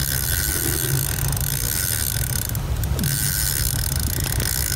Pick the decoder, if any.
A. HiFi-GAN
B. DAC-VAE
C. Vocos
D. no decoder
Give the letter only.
D